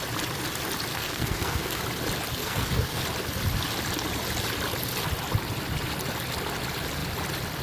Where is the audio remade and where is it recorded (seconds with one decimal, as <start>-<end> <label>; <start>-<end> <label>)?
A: 0.0-0.9 recorded; 0.9-1.8 remade; 1.8-2.4 recorded; 2.4-3.0 remade; 3.0-7.6 recorded